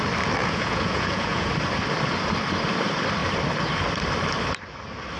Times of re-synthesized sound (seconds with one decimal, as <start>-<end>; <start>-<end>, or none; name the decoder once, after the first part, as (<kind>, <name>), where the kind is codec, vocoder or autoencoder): 0.4-1.5 (vocoder, Vocos)